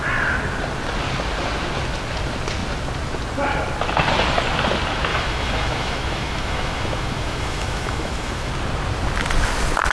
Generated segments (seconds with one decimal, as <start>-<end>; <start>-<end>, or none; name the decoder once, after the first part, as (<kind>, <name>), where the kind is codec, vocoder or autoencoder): 5.1-8.5 (autoencoder, DAC-VAE)